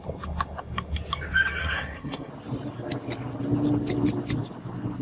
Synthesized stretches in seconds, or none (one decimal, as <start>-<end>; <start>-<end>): 1.6-2.3